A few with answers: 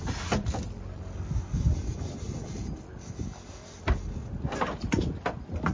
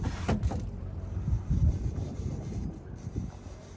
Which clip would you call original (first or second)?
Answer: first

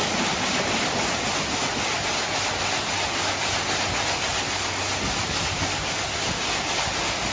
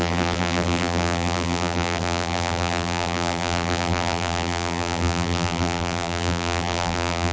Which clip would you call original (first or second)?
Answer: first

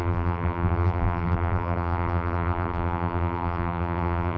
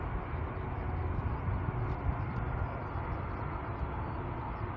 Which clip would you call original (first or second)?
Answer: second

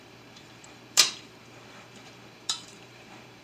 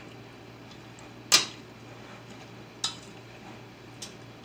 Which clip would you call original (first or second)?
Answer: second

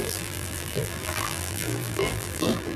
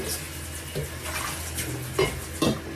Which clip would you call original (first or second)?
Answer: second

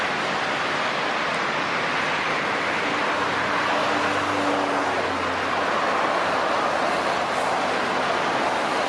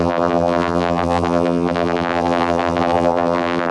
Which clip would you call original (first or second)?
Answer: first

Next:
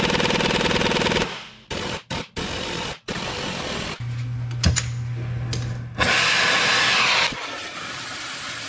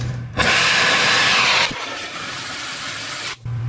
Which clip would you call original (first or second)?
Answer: first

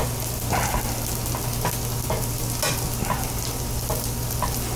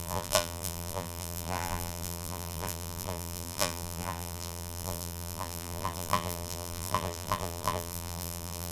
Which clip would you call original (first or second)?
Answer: first